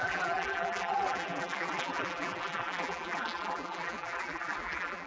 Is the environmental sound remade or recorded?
remade